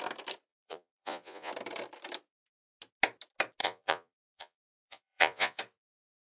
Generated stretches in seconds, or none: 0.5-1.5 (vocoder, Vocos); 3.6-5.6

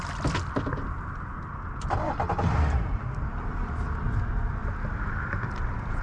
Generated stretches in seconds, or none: none

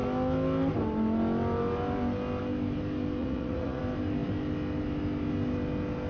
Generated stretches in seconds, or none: 3.2-3.8 (vocoder, Vocos)

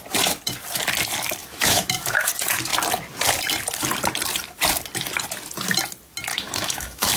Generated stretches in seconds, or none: 1.4-2.3 (autoencoder, DAC-VAE); 6.3-7.2

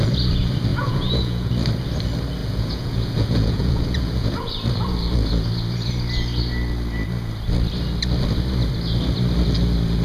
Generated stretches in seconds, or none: 0.7-1.5 (vocoder, Vocos); 2.4-4.5

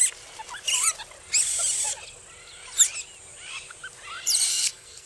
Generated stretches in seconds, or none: 4.5-5.1 (codec, SNAC)

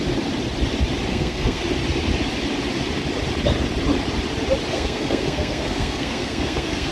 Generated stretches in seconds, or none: 1.1-1.6 (codec, SNAC); 4.7-6.9

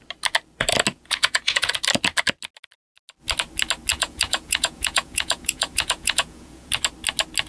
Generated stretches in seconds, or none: 0.9-1.7 (vocoder, Vocos); 3.9-6.7